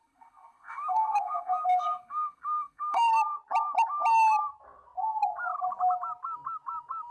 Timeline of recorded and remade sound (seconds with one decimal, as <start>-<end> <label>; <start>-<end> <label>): 0.0-3.1 remade; 3.1-7.1 recorded